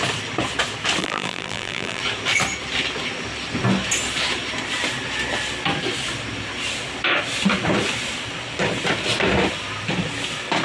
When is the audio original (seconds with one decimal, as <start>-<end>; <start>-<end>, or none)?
0.0-1.0; 2.0-10.6